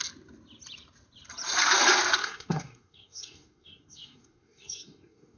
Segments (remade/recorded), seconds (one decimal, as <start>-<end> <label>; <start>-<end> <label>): 0.0-2.2 recorded; 2.2-5.4 remade